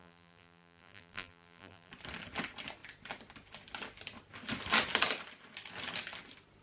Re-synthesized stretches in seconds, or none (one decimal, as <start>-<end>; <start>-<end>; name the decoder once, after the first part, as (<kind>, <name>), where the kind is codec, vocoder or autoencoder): 0.0-1.9 (vocoder, BigVGAN v2)

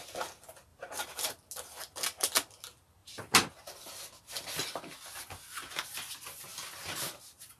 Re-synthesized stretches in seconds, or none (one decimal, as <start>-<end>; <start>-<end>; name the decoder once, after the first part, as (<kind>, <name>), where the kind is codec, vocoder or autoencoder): 0.7-1.3 (vocoder, BigVGAN v2); 3.0-3.5; 4.6-5.9; 6.5-7.6

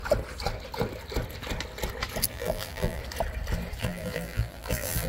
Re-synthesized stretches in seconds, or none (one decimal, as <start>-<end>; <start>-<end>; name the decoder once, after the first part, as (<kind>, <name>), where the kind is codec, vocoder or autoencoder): 2.3-3.0 (vocoder, BigVGAN v2); 3.8-5.1

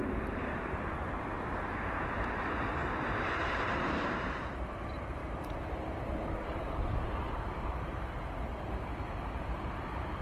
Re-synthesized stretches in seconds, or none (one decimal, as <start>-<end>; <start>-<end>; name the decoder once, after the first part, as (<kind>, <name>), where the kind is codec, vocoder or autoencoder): 0.0-10.2 (vocoder, BigVGAN v2)

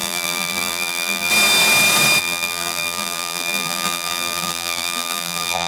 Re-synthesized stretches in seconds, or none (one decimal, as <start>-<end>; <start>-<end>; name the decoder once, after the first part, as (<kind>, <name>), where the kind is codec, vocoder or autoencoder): 0.0-1.3 (vocoder, BigVGAN v2); 2.2-5.7

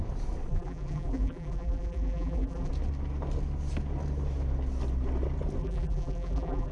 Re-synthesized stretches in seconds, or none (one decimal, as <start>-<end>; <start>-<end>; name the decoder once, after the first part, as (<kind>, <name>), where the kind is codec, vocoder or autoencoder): 0.5-2.7 (vocoder, BigVGAN v2); 5.6-6.7